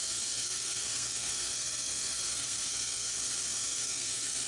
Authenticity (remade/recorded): remade